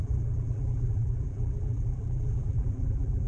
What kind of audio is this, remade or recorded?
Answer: remade